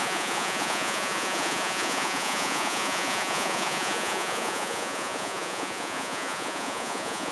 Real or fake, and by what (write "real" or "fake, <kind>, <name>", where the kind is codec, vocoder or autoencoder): fake, vocoder, Vocos